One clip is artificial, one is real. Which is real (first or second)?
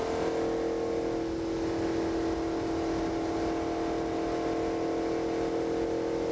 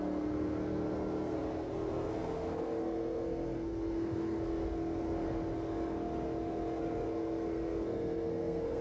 first